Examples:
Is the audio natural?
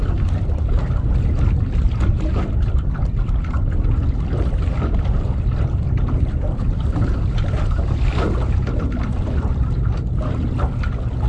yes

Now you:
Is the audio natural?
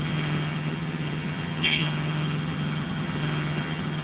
no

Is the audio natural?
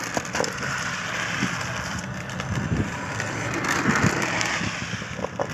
yes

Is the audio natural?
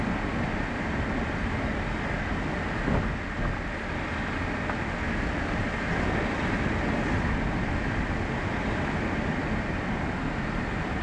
yes